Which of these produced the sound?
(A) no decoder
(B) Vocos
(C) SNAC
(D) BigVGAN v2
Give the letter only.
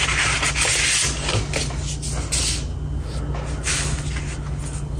A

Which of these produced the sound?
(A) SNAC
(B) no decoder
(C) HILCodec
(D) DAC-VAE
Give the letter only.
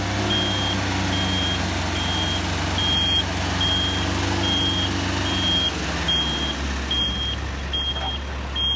B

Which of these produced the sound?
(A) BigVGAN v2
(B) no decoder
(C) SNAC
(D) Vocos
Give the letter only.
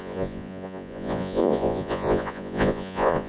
D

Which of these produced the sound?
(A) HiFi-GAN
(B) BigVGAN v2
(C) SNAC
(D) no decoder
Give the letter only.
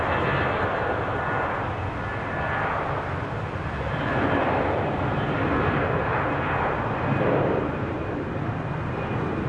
D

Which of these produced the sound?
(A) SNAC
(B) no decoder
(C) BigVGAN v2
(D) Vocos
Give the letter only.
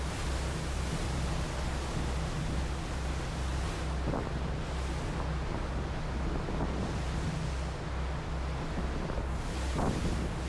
B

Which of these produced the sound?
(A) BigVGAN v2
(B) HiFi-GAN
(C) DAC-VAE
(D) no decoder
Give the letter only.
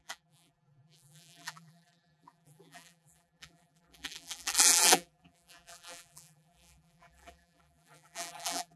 A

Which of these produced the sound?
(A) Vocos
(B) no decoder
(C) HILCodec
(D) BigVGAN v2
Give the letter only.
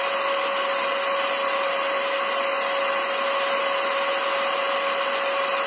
B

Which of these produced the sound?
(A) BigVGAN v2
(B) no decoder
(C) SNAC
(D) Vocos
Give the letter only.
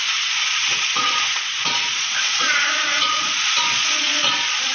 D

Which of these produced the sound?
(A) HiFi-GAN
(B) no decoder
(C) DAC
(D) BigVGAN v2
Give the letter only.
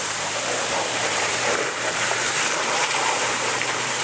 D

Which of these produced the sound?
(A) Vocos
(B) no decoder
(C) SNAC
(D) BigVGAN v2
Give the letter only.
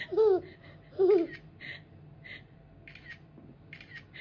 B